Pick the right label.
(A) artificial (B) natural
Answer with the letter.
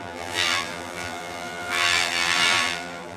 A